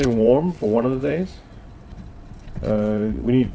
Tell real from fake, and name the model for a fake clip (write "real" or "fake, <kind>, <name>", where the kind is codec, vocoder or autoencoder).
fake, vocoder, WaveNeXt